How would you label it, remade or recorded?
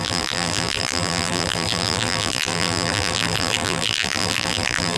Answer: remade